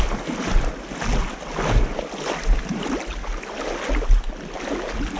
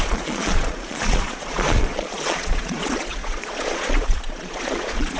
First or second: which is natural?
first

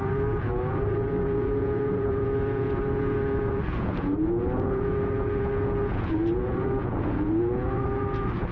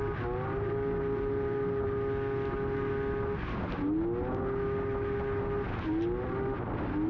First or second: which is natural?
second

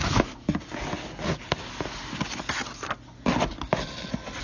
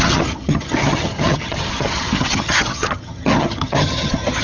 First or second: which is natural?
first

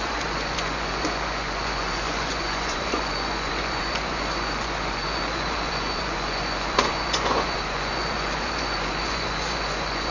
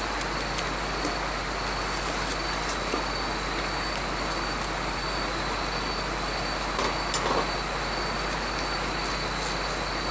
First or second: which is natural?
second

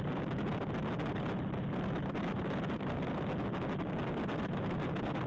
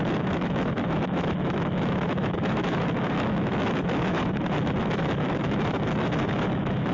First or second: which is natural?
first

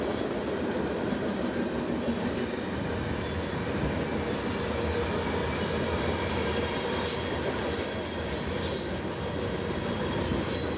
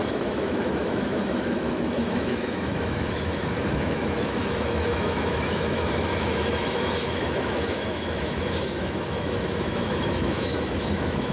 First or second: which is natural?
first